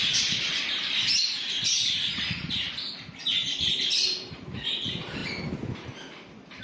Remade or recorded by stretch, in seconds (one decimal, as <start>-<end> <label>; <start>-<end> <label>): 0.0-6.6 recorded